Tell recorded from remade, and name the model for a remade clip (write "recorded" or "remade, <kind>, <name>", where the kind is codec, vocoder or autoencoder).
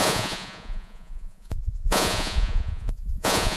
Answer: remade, vocoder, Vocos